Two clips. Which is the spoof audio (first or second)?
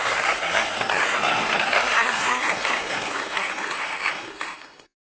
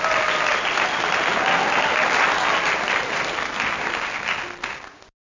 first